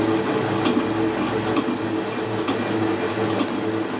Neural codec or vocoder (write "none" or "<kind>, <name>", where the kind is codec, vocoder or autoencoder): none